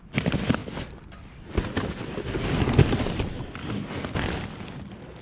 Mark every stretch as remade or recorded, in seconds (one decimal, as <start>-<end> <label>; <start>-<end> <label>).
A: 0.0-5.2 recorded